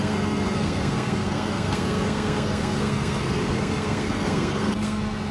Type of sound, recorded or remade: remade